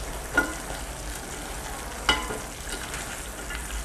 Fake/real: real